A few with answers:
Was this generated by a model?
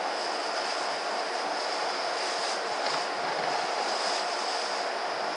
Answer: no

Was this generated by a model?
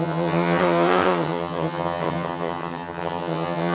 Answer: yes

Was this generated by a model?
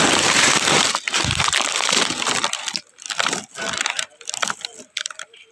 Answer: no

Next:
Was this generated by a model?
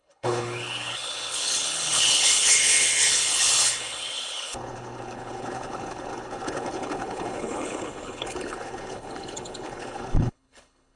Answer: yes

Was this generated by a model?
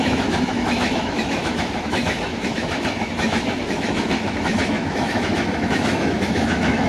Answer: yes